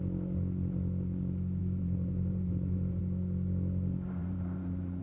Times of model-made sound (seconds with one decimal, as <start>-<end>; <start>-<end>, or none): 1.6-3.0; 4.2-5.0